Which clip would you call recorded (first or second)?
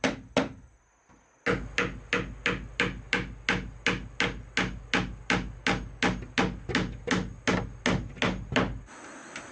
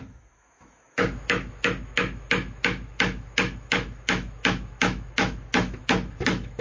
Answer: first